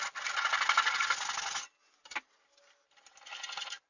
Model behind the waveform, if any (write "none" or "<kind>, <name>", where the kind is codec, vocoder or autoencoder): none